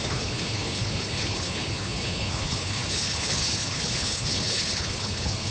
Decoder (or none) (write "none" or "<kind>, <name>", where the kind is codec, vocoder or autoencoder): codec, HILCodec